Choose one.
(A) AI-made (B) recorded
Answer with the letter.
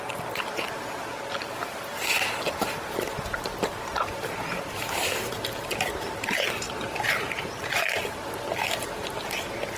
B